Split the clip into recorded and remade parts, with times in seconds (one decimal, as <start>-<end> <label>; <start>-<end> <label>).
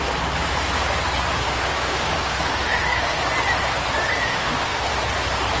0.0-1.4 recorded; 1.4-3.2 remade; 3.2-4.3 recorded; 4.3-4.9 remade; 4.9-5.6 recorded